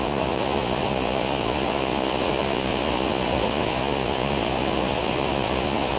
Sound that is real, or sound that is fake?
fake